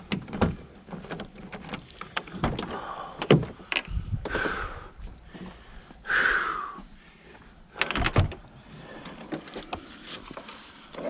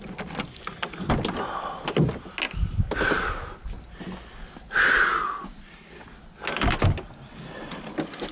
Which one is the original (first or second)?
second